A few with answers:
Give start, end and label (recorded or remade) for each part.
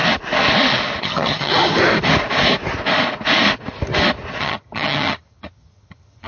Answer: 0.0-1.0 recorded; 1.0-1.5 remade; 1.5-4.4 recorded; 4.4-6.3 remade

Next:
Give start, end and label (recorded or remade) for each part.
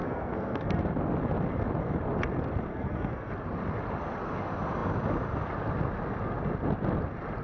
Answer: 0.0-0.8 remade; 0.8-2.7 recorded; 2.7-3.3 remade; 3.3-7.4 recorded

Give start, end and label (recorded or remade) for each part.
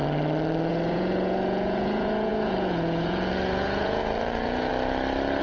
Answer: 0.0-0.7 recorded; 0.7-4.7 remade; 4.7-5.4 recorded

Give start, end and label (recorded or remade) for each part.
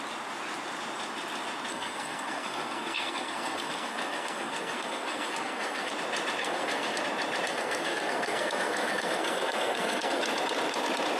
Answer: 0.0-1.7 recorded; 1.7-5.9 remade; 5.9-6.4 recorded; 6.4-7.0 remade; 7.0-7.5 recorded; 7.5-10.2 remade; 10.2-11.2 recorded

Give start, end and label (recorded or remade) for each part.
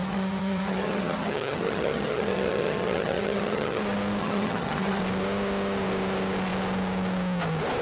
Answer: 0.0-3.8 remade; 3.8-4.2 recorded; 4.2-5.0 remade; 5.0-7.8 recorded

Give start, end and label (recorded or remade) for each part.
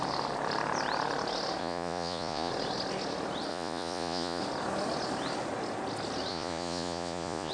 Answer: 0.0-1.6 recorded; 1.6-2.5 remade; 2.5-3.5 recorded; 3.5-4.4 remade; 4.4-6.3 recorded; 6.3-7.5 remade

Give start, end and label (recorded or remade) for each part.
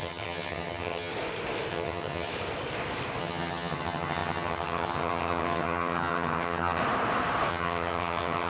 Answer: 0.0-1.1 remade; 1.1-1.7 recorded; 1.7-2.3 remade; 2.3-3.2 recorded; 3.2-6.8 remade; 6.8-7.5 recorded; 7.5-8.5 remade